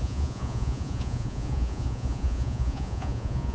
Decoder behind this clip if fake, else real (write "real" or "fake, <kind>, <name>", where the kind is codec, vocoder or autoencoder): fake, vocoder, Vocos